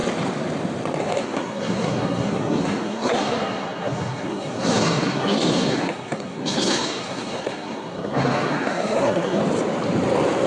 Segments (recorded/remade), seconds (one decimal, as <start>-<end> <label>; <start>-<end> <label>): 0.0-1.0 recorded; 1.0-9.4 remade; 9.4-10.5 recorded